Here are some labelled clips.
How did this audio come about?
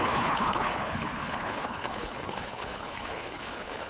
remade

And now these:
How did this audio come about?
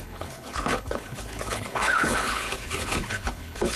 remade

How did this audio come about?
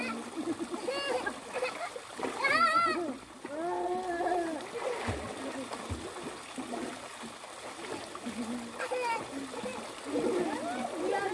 recorded